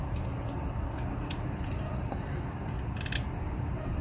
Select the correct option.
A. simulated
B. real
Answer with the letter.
B